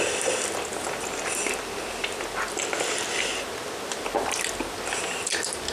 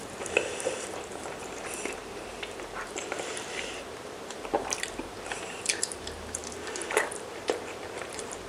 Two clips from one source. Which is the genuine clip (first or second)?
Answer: first